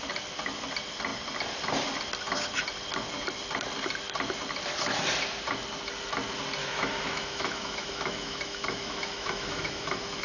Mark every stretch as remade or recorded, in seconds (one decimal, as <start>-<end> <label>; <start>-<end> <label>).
0.0-6.6 recorded; 6.6-10.2 remade

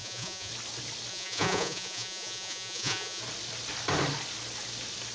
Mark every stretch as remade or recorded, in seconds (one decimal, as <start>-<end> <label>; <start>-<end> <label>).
0.0-0.5 remade; 0.5-1.1 recorded; 1.1-3.2 remade; 3.2-5.1 recorded